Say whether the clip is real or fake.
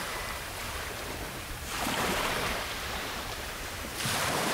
fake